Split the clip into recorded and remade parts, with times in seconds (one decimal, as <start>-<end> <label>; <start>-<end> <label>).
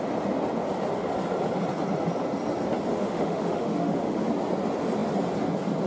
0.0-2.9 recorded; 2.9-4.2 remade; 4.2-5.9 recorded